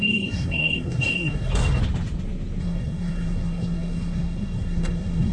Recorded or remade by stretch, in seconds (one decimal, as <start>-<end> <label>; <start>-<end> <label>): 0.0-1.8 remade; 1.8-2.6 recorded; 2.6-5.3 remade